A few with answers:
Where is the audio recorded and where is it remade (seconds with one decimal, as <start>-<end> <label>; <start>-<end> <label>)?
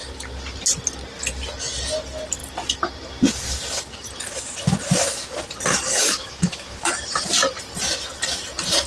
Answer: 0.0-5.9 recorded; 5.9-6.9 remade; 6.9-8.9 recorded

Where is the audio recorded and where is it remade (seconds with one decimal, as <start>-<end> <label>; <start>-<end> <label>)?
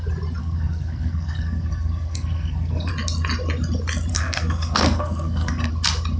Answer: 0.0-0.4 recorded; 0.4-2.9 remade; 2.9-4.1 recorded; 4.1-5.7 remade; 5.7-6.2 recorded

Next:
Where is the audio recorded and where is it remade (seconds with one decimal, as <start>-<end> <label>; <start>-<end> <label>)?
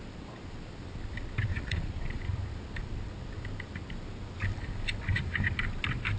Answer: 0.0-1.5 recorded; 1.5-2.2 remade; 2.2-6.2 recorded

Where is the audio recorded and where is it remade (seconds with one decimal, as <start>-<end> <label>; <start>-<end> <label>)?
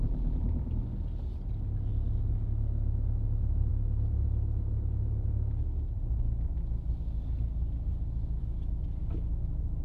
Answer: 0.0-0.7 remade; 0.7-9.8 recorded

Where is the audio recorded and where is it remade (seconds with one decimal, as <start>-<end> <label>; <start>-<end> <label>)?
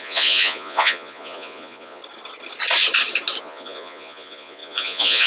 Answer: 0.0-2.0 remade; 2.0-3.4 recorded; 3.4-5.3 remade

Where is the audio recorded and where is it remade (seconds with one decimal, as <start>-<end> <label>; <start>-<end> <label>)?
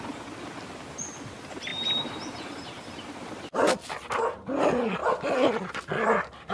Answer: 0.0-1.7 recorded; 1.7-2.6 remade; 2.6-6.5 recorded